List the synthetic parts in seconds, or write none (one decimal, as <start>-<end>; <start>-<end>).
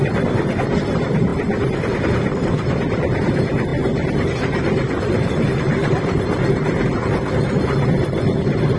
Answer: 3.7-7.6